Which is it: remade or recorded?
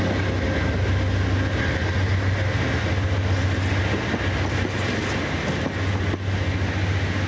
recorded